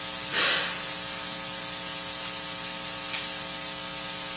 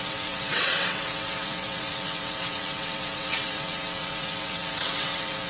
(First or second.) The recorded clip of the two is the first